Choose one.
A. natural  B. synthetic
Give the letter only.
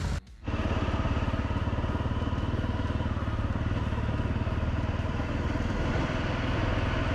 A